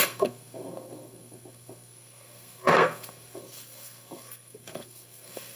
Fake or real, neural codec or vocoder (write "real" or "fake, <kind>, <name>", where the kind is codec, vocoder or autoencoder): fake, codec, SNAC